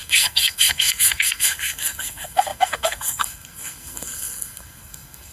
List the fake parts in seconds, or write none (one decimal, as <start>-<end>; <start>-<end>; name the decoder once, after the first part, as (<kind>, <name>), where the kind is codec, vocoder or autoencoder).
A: 0.0-5.3 (codec, SNAC)